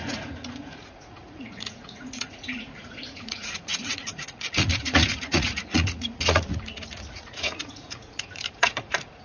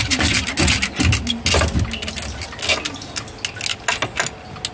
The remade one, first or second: first